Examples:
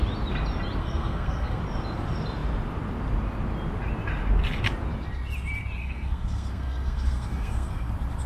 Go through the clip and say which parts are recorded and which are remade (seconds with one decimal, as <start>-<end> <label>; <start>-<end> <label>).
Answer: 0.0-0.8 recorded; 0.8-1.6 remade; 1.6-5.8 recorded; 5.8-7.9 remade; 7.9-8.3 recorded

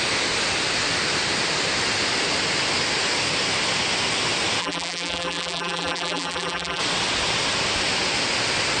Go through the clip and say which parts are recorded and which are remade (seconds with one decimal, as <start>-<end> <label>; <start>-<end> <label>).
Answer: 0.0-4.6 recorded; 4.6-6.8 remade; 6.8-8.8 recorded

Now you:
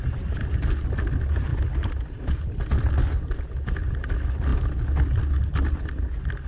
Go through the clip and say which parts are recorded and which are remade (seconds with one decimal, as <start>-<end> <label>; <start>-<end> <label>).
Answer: 0.0-6.5 recorded

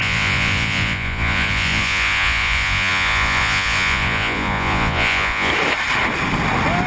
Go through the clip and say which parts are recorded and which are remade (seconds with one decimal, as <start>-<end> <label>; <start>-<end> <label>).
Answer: 0.0-5.5 remade; 5.5-6.9 recorded

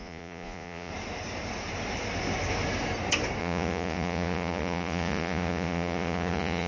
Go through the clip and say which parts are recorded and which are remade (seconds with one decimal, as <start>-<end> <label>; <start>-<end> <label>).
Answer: 0.0-0.9 remade; 0.9-3.4 recorded; 3.4-6.7 remade